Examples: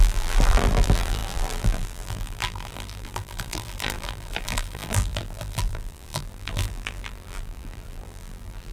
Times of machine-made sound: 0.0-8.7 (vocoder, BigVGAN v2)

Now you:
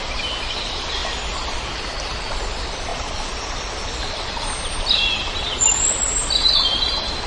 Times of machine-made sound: 1.0-1.6 (vocoder, BigVGAN v2); 2.9-5.4

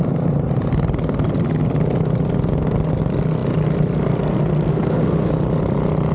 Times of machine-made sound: 4.7-5.3 (codec, SNAC)

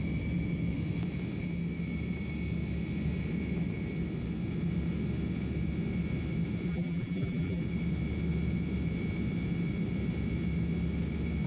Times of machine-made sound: 6.7-7.6 (vocoder, BigVGAN v2)